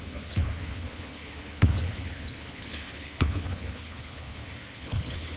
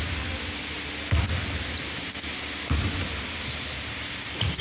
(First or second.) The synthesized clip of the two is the first